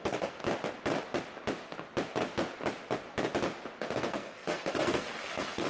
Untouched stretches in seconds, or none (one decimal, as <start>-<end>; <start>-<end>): 0.4-3.8